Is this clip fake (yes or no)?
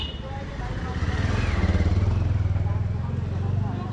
no